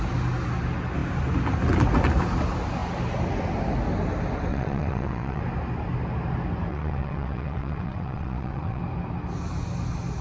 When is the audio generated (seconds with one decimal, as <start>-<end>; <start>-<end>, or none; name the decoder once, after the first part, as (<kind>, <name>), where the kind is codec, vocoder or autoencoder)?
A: 4.5-5.4 (vocoder, WaveNeXt); 6.7-8.8